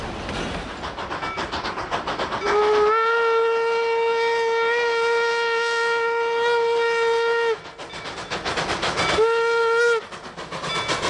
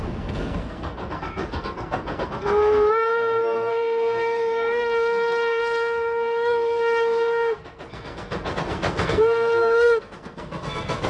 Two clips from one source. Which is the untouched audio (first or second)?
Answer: first